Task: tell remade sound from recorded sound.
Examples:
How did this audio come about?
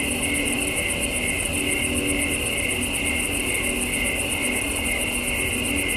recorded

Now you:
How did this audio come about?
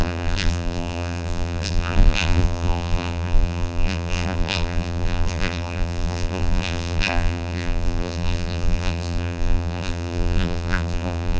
remade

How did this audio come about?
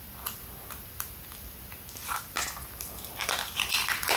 remade